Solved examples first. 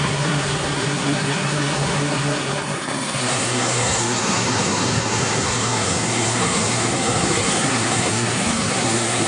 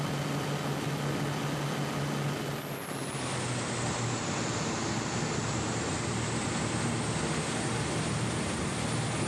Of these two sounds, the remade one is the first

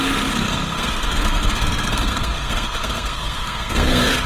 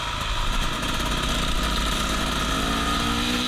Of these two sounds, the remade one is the first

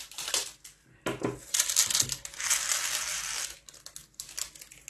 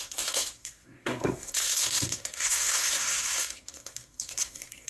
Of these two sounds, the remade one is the second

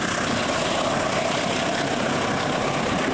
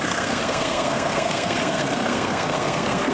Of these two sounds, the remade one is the second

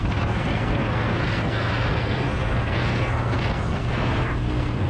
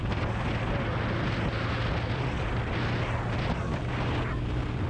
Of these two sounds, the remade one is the first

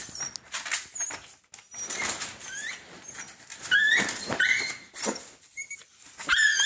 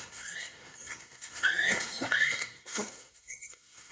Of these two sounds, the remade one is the second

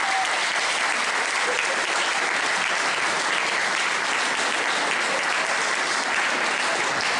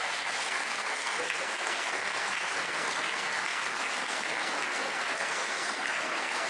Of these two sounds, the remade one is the second